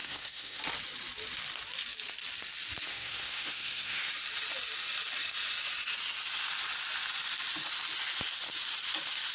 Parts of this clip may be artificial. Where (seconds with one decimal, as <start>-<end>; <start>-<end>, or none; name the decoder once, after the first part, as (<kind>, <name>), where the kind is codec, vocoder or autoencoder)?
0.0-0.6 (codec, SNAC); 2.9-4.1